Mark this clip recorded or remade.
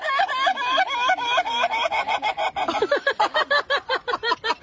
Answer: recorded